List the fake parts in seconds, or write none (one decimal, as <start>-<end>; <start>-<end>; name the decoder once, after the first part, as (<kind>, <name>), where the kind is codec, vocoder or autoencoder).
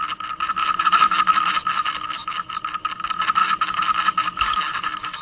0.6-2.5 (autoencoder, DAC-VAE); 3.4-5.2